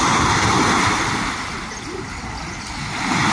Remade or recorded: recorded